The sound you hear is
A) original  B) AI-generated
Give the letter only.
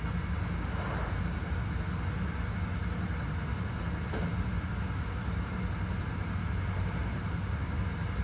A